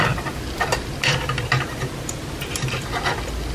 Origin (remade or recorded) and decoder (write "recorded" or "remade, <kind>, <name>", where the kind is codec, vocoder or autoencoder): recorded